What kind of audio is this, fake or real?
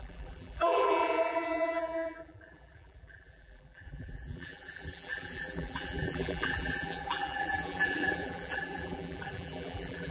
fake